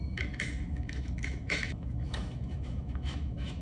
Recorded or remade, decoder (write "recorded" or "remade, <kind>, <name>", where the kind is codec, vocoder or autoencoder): remade, autoencoder, DAC-VAE